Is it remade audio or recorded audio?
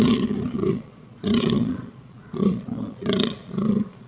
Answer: remade